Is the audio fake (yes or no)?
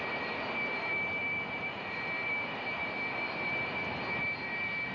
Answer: no